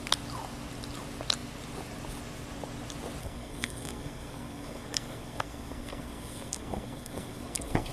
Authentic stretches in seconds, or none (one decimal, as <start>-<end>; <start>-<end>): 0.0-3.2